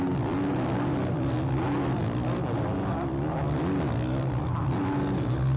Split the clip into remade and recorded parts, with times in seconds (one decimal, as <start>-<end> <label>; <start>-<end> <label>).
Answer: 0.0-5.6 recorded

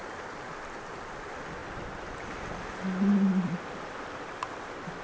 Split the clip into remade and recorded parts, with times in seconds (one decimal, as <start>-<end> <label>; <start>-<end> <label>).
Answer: 0.0-5.0 recorded